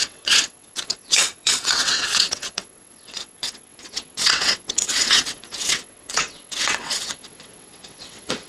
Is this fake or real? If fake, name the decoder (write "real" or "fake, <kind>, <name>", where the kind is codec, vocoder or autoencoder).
fake, vocoder, WaveNeXt